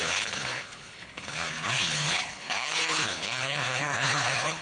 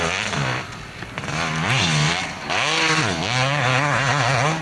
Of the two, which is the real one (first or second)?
second